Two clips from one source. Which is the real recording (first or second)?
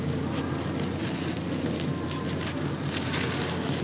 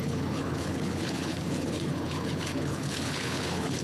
first